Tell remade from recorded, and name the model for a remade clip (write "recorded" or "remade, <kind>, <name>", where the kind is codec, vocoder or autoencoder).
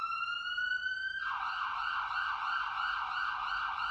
recorded